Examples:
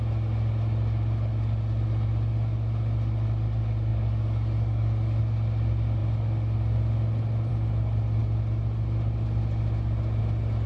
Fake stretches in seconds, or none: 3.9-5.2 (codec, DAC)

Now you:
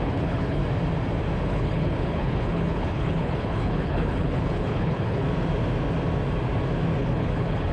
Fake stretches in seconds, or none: 0.0-0.6 (codec, HILCodec); 1.5-5.2; 7.0-7.7

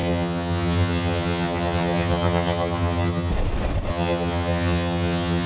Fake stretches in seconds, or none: 0.0-3.3 (vocoder, HiFi-GAN); 3.9-5.5

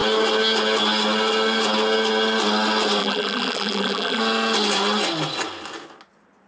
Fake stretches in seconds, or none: 3.0-4.2 (vocoder, BigVGAN v2)

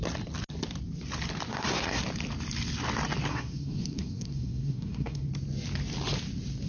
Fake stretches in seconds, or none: 1.5-2.0 (codec, SNAC); 3.3-5.3

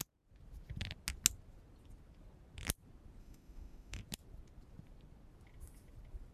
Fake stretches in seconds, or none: 3.2-4.0 (autoencoder, DAC-VAE)

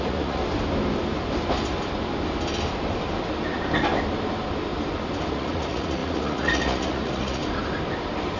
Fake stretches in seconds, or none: 0.0-0.4 (vocoder, Vocos); 5.3-7.4

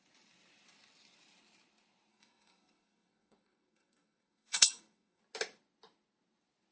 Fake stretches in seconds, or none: 2.1-5.2 (codec, SNAC)